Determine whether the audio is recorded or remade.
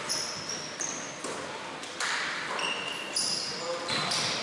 remade